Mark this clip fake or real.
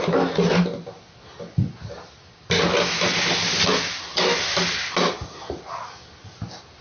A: real